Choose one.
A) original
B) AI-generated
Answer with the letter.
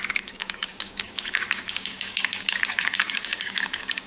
B